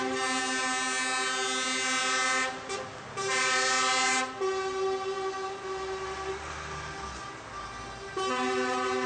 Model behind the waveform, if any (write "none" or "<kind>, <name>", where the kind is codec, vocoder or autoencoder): none